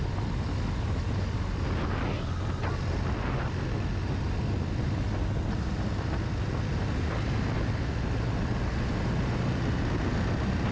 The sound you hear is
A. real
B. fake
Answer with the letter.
A